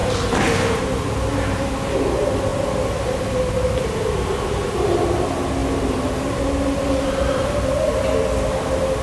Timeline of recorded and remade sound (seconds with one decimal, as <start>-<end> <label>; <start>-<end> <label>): 0.0-1.7 remade; 1.7-9.0 recorded